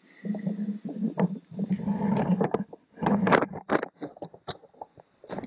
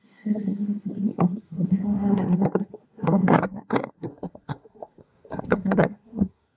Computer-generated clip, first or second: second